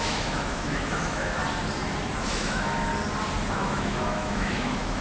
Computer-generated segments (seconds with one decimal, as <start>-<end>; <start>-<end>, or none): 0.0-1.4; 2.2-2.9; 3.5-5.0